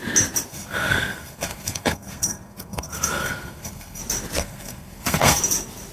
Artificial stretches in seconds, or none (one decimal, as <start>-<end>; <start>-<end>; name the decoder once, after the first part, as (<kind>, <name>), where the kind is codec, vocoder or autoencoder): 0.5-4.0 (codec, SNAC); 4.4-5.4